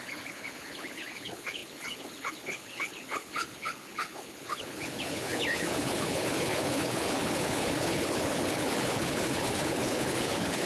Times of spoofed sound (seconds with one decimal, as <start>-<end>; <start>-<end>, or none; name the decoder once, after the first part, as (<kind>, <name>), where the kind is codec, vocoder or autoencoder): 0.0-10.7 (codec, HILCodec)